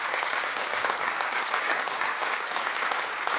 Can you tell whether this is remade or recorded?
remade